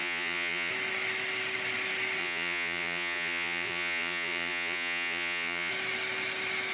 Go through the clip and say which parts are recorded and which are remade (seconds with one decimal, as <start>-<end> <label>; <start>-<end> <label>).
0.0-0.7 remade; 0.7-2.2 recorded; 2.2-5.7 remade; 5.7-6.7 recorded